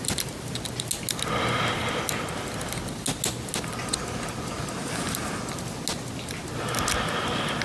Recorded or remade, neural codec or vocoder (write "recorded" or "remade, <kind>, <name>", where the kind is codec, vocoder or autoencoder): recorded